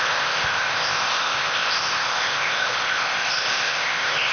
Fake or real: fake